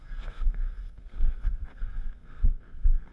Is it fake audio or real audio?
fake